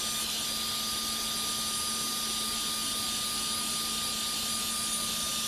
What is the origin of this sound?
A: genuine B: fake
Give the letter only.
A